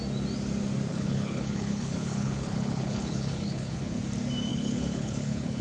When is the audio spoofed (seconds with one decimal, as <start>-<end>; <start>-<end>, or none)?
0.9-4.0; 4.5-5.6